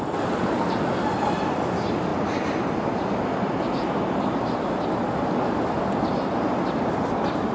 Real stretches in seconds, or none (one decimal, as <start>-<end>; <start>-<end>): 0.0-7.5